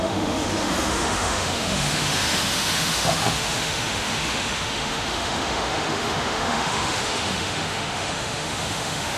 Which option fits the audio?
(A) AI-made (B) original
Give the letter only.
A